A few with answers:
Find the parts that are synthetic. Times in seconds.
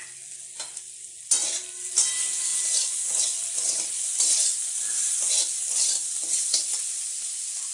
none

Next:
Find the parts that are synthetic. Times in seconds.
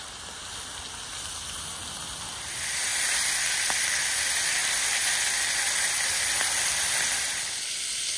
none